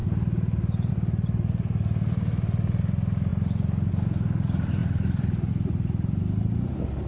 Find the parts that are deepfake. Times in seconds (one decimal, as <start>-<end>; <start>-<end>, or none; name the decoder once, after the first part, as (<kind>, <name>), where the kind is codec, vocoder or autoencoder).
3.3-3.9 (vocoder, BigVGAN v2); 4.8-5.5

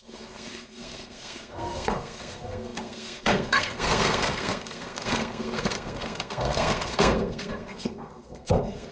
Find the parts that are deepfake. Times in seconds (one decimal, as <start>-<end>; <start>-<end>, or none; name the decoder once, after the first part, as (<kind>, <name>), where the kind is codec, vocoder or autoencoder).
0.0-8.9 (codec, SNAC)

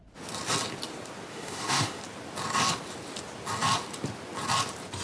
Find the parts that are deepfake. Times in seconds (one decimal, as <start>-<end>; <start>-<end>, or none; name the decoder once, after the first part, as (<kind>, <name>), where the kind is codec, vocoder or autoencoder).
1.3-2.0 (autoencoder, DAC-VAE)

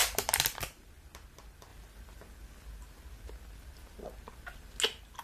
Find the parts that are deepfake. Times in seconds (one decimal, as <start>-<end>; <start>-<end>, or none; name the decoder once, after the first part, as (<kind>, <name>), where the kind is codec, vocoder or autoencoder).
0.0-0.9 (vocoder, BigVGAN v2)

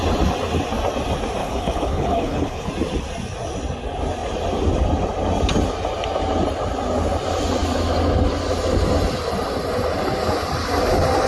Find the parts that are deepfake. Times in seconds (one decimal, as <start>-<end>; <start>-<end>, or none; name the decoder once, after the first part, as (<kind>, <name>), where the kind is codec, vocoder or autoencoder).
1.4-2.7 (codec, HILCodec)

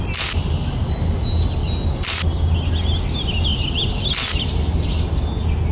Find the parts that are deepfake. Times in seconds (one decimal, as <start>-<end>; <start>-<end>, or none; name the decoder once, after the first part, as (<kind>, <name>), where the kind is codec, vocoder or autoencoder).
none

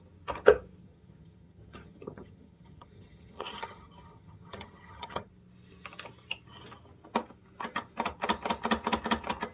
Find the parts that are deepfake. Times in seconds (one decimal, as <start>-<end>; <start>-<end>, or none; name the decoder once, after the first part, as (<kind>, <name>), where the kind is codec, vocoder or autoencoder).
0.8-5.3 (vocoder, HiFi-GAN)

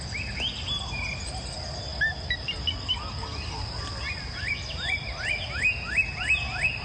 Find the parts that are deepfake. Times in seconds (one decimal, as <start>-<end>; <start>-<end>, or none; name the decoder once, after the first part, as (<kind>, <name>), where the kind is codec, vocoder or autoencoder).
none